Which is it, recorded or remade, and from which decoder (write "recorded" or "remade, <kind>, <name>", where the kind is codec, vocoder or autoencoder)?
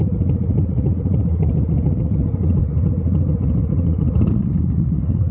remade, vocoder, Vocos